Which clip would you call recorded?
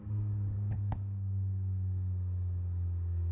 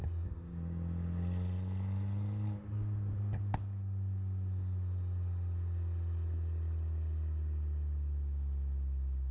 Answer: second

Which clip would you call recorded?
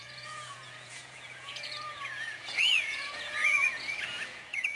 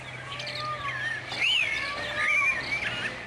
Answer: second